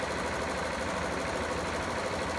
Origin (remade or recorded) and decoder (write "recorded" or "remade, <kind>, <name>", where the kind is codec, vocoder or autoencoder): recorded